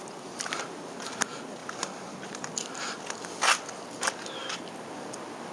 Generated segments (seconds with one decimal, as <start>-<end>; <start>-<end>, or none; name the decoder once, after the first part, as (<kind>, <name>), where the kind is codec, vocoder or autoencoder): 1.6-2.8 (vocoder, BigVGAN v2); 4.4-5.5